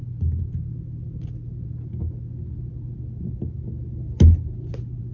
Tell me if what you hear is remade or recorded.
recorded